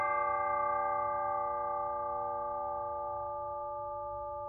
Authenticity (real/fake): real